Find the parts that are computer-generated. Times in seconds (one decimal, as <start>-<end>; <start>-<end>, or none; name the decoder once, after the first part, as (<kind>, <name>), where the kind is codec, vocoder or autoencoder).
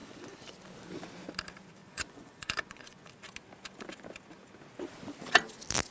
0.0-0.5 (vocoder, Vocos); 1.8-3.1